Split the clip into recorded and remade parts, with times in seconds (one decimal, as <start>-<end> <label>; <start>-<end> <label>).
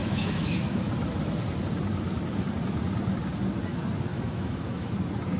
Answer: 0.0-0.9 remade; 0.9-4.1 recorded; 4.1-4.9 remade; 4.9-5.4 recorded